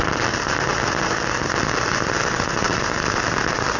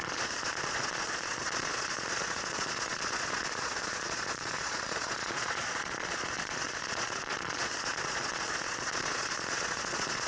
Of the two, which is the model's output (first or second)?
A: second